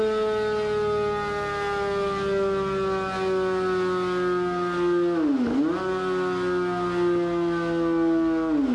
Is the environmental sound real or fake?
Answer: real